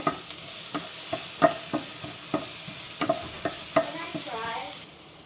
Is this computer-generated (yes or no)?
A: no